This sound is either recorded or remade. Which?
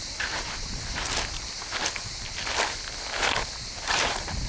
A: recorded